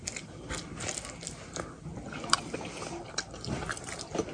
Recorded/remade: recorded